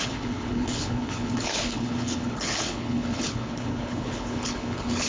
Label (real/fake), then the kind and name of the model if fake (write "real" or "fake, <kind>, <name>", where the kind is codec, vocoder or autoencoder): fake, codec, HILCodec